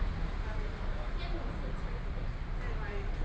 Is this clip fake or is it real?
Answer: real